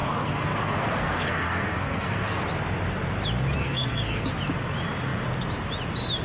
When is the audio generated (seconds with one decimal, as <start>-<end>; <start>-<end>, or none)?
0.0-2.4; 3.6-4.3